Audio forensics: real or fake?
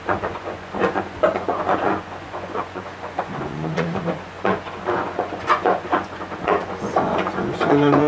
fake